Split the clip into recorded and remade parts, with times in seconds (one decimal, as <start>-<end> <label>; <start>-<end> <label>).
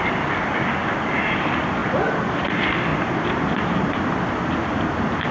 0.0-1.8 recorded; 1.8-2.3 remade; 2.3-2.9 recorded; 2.9-4.0 remade; 4.0-5.3 recorded